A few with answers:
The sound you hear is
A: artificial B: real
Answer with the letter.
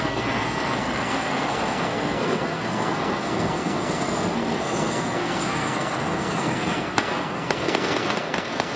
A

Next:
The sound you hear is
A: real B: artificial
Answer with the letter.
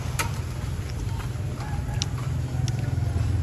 A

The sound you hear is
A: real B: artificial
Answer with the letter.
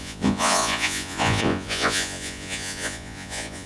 B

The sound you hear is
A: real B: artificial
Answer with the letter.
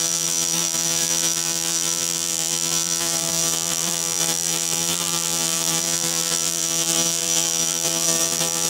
B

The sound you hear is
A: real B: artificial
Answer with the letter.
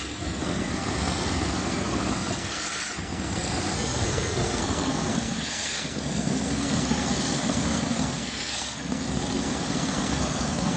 B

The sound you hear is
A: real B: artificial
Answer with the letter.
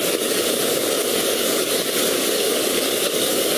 B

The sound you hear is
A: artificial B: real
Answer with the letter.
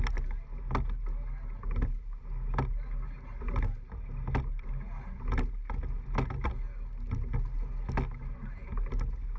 B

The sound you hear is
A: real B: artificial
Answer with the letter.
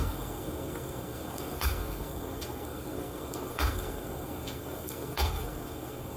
B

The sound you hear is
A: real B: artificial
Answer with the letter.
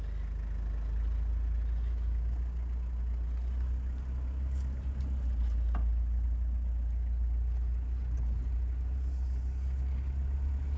A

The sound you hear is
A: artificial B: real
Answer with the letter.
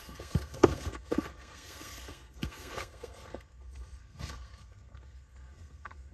A